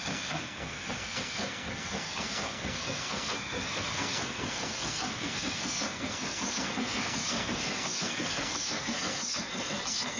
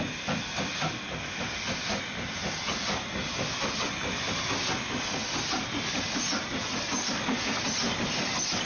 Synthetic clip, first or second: first